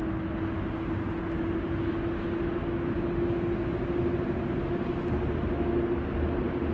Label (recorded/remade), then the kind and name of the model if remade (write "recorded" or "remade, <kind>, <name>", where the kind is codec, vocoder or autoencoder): recorded